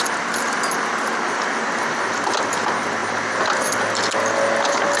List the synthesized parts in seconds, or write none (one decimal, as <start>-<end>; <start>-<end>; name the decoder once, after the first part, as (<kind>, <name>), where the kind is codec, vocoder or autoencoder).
none